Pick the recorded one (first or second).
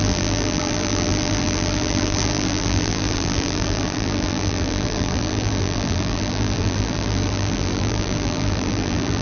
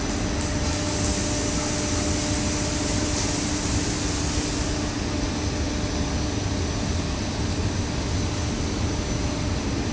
second